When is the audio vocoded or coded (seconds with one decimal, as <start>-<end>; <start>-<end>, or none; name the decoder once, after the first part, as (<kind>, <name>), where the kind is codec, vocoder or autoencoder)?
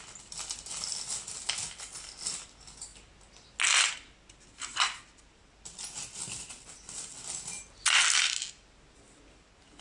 none